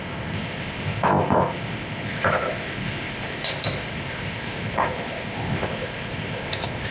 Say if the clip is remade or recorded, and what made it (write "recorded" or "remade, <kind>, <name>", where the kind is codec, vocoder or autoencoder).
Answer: remade, codec, ZipCodec